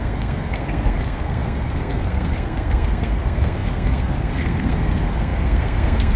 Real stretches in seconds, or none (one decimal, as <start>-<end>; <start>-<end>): none